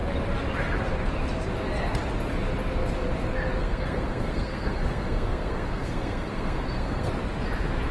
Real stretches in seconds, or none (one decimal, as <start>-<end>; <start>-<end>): 0.0-3.6; 7.1-7.9